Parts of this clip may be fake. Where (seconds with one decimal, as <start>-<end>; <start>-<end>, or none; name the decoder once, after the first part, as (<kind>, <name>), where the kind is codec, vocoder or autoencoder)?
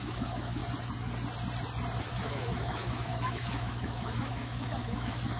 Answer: 0.0-0.6 (autoencoder, DAC-VAE); 2.0-5.4